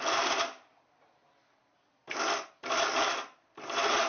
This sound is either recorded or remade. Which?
remade